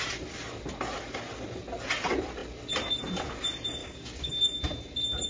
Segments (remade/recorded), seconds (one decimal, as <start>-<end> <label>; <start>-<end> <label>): 0.0-3.8 recorded; 3.8-4.3 remade; 4.3-5.3 recorded

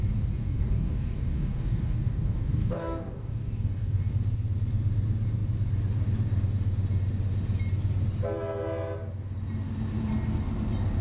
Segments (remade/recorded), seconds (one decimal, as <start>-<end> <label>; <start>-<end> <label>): 0.0-0.4 recorded; 0.4-4.1 remade; 4.1-11.0 recorded

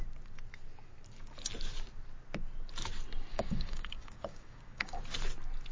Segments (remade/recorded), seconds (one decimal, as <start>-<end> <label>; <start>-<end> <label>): 0.0-3.3 recorded; 3.3-5.0 remade; 5.0-5.7 recorded

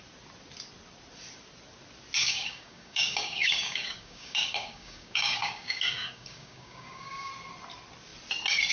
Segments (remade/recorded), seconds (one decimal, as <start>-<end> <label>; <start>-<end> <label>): 0.0-2.2 recorded; 2.2-7.3 remade; 7.3-8.7 recorded

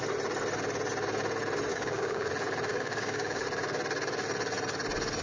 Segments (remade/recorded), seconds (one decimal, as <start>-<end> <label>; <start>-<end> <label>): 0.0-1.7 recorded; 1.7-2.3 remade; 2.3-2.7 recorded; 2.7-3.4 remade; 3.4-5.2 recorded

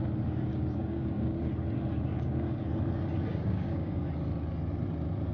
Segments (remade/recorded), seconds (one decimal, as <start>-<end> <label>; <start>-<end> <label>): 0.0-0.5 recorded; 0.5-1.5 remade; 1.5-2.1 recorded; 2.1-2.7 remade; 2.7-3.3 recorded; 3.3-4.0 remade; 4.0-5.3 recorded